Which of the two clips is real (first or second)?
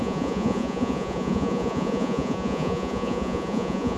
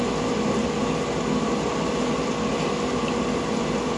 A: second